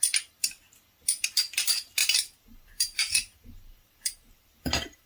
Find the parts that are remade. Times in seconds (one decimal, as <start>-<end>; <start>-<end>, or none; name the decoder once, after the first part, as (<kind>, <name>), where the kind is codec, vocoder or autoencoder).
2.0-5.1 (vocoder, BigVGAN v2)